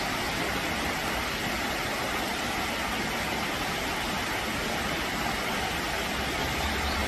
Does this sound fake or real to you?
real